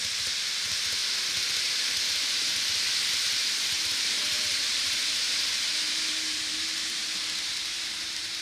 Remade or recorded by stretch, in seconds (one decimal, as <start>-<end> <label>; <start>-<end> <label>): 0.0-1.0 remade; 1.0-3.1 recorded; 3.1-8.4 remade